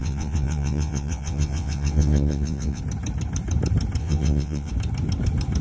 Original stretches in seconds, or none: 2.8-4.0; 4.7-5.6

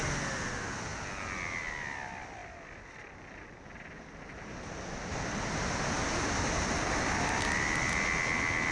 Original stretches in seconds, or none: 0.0-8.7

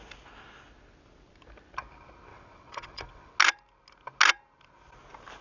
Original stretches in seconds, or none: 0.0-2.3; 3.3-5.4

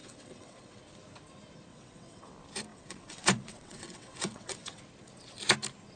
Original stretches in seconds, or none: 0.8-1.7; 2.3-2.7; 4.8-6.0

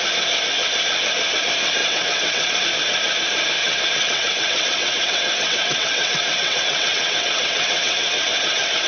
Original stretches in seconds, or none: 0.0-1.8; 2.6-3.6

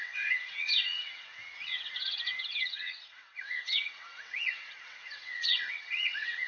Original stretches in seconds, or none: none